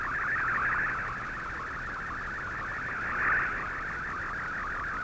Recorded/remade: recorded